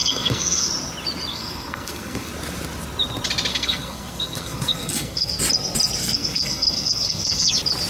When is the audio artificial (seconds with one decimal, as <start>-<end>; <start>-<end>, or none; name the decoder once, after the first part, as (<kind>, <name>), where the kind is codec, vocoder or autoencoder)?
0.0-0.7 (codec, SNAC); 1.3-2.3; 3.5-5.4; 6.0-7.5